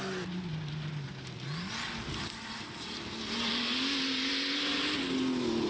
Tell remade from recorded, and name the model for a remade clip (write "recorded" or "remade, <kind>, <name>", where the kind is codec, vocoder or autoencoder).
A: recorded